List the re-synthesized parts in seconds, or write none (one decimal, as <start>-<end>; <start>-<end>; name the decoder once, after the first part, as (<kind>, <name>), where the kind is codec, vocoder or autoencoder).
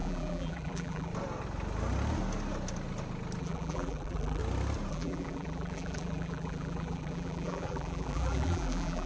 0.0-1.1 (vocoder, BigVGAN v2); 3.4-4.4; 4.9-9.1